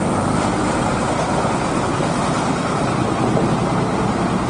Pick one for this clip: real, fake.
real